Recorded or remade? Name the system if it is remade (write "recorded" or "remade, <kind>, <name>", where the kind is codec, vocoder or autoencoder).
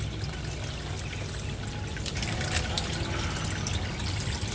recorded